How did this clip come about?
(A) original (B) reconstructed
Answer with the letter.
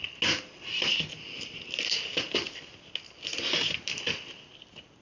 A